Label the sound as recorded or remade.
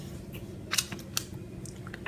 recorded